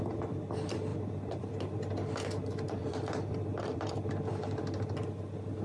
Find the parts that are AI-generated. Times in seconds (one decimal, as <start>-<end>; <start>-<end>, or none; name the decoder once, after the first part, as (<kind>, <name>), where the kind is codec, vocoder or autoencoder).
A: 0.9-1.5 (vocoder, BigVGAN v2); 2.8-4.1